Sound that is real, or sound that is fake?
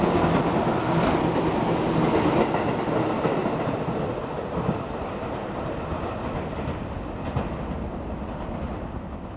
real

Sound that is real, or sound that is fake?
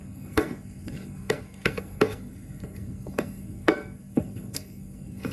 fake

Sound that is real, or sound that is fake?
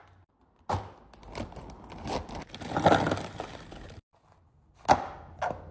real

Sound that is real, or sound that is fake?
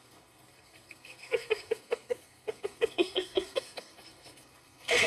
fake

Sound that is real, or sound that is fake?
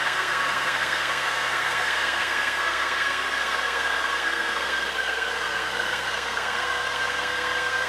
fake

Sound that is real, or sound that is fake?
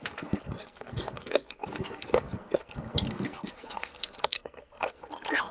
fake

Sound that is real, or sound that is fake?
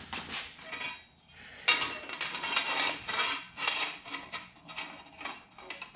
real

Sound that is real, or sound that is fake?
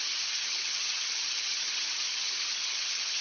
fake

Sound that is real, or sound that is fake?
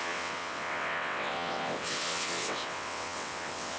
fake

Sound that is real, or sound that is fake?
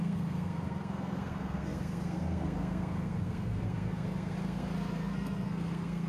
fake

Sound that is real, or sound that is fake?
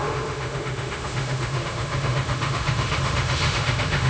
fake